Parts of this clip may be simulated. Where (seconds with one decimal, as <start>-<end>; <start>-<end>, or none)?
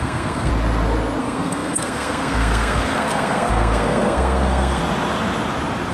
0.0-0.5; 1.2-4.8